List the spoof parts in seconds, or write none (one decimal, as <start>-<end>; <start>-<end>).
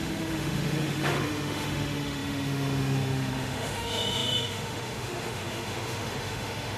0.0-6.8